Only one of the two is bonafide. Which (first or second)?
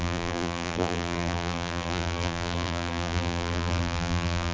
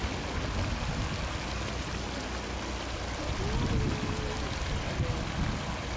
second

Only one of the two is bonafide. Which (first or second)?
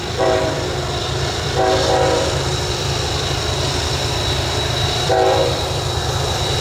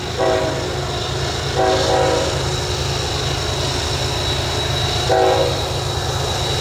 second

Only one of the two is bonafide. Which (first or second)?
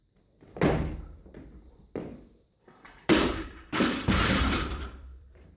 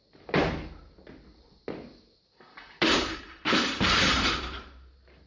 second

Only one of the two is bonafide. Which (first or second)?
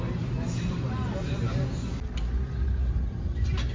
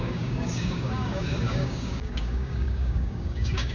first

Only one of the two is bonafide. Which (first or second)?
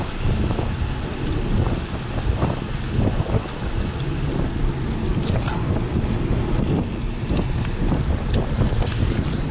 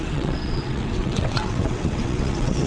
first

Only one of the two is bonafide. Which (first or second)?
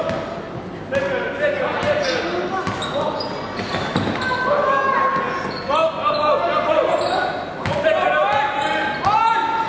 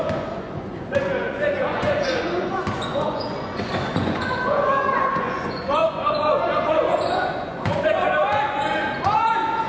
first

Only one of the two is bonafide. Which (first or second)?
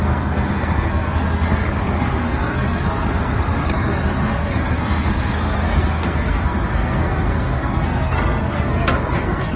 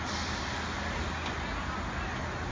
second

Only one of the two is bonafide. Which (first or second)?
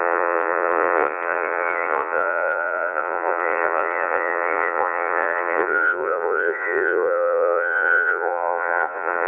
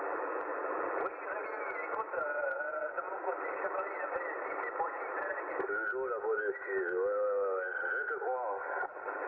second